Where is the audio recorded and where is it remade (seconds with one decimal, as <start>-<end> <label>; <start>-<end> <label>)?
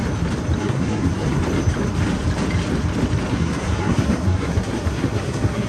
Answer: 0.0-0.6 recorded; 0.6-1.4 remade; 1.4-3.3 recorded; 3.3-5.7 remade